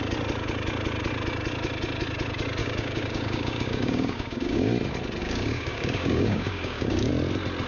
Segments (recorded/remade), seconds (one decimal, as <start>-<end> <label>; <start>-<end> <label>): 0.0-2.6 recorded; 2.6-4.7 remade; 4.7-5.2 recorded; 5.2-7.1 remade; 7.1-7.7 recorded